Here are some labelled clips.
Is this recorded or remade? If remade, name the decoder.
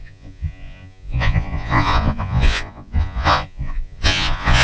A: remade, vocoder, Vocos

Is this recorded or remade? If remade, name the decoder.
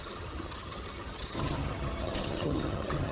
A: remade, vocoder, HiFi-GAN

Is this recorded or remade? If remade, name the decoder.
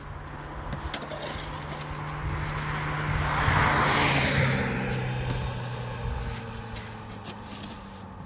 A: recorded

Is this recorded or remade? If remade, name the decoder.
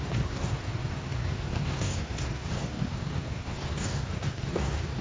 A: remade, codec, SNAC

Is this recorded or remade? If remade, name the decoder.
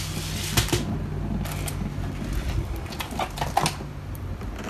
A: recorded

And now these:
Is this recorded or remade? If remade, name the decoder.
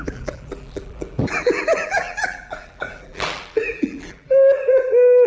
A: remade, vocoder, BigVGAN v2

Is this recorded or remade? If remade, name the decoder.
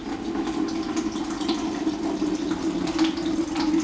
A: recorded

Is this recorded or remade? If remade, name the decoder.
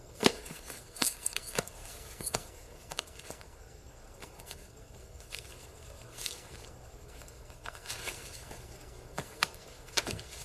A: remade, codec, SNAC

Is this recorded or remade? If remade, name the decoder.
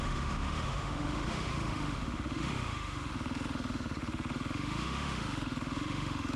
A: remade, autoencoder, DAC-VAE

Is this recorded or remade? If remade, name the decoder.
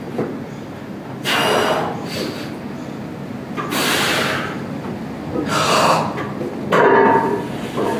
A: recorded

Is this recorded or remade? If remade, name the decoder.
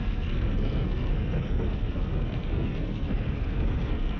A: remade, codec, SNAC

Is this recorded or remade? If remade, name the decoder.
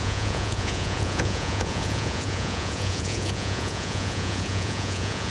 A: remade, vocoder, Vocos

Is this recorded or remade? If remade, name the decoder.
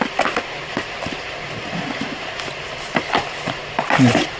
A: recorded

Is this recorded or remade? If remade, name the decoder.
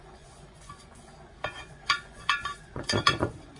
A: remade, vocoder, Vocos